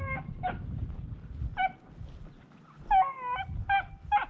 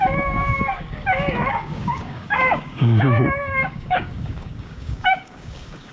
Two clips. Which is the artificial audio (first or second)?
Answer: second